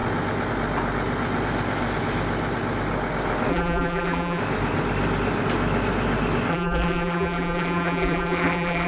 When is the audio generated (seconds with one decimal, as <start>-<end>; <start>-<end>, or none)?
3.5-4.4; 6.5-8.9